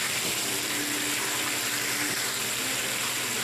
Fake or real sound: real